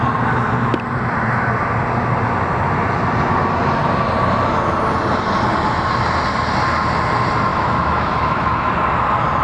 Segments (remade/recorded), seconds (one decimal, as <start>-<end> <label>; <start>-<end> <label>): 0.0-7.5 recorded; 7.5-8.7 remade; 8.7-9.4 recorded

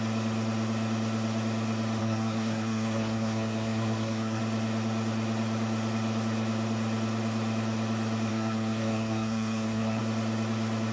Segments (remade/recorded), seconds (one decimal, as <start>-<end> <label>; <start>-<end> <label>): 0.0-2.0 recorded; 2.0-4.4 remade; 4.4-8.3 recorded; 8.3-10.0 remade; 10.0-10.9 recorded

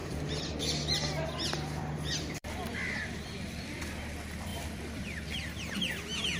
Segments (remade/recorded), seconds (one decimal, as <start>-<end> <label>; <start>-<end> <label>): 0.0-3.8 remade; 3.8-4.5 recorded; 4.5-5.9 remade; 5.9-6.4 recorded

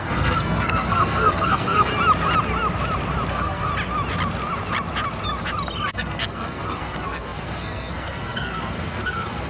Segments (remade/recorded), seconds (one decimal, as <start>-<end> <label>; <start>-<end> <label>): 0.0-1.9 remade; 1.9-3.3 recorded; 3.3-3.7 remade; 3.7-5.9 recorded; 5.9-9.5 remade

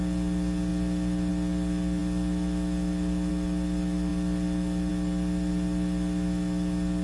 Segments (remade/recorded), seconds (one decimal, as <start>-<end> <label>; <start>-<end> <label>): 0.0-7.0 recorded

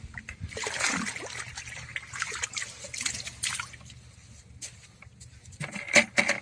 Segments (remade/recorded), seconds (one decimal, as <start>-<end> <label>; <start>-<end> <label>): 0.0-6.4 recorded

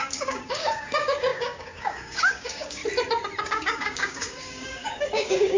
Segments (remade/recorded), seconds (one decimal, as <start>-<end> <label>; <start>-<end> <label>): 0.0-2.8 remade; 2.8-3.5 recorded; 3.5-5.6 remade

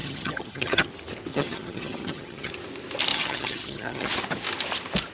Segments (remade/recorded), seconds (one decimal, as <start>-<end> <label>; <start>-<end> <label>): 0.0-0.9 remade; 0.9-1.3 recorded; 1.3-2.5 remade; 2.5-3.1 recorded; 3.1-4.1 remade; 4.1-5.1 recorded